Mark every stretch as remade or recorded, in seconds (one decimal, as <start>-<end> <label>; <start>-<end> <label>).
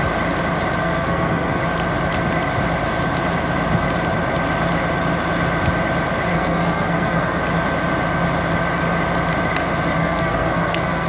0.0-0.8 recorded; 0.8-1.6 remade; 1.6-6.3 recorded; 6.3-7.4 remade; 7.4-10.0 recorded; 10.0-11.1 remade